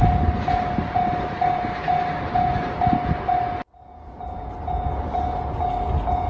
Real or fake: real